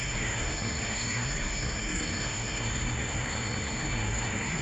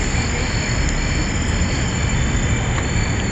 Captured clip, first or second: second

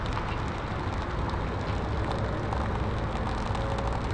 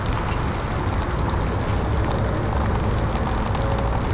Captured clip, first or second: first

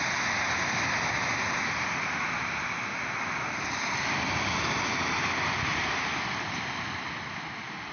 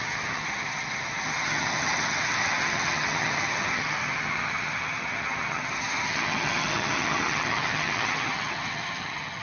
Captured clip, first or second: first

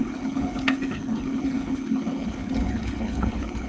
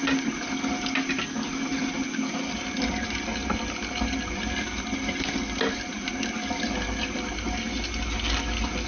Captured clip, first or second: second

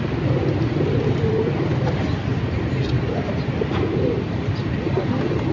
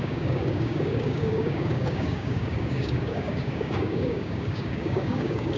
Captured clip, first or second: first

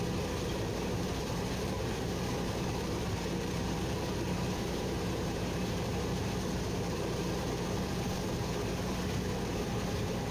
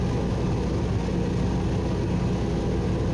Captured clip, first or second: second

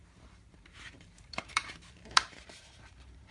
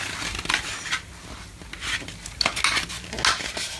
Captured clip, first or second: second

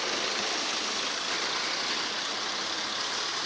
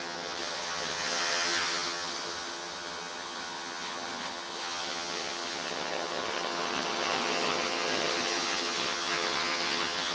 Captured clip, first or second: first